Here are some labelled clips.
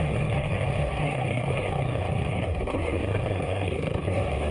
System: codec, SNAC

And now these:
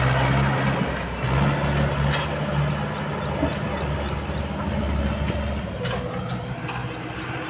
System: none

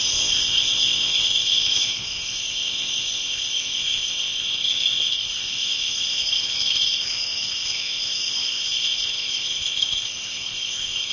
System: codec, ZipCodec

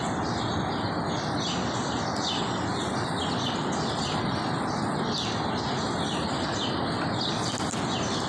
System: none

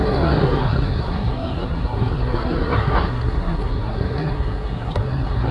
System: codec, SNAC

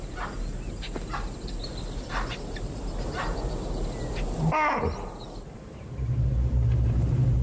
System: none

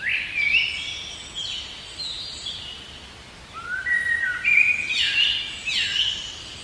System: none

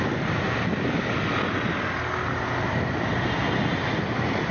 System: none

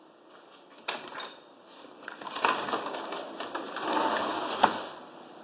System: none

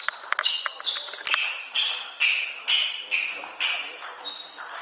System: none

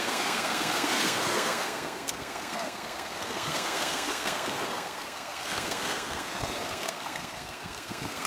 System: codec, SNAC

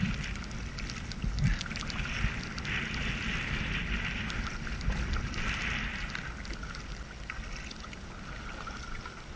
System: none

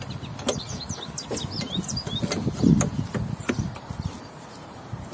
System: none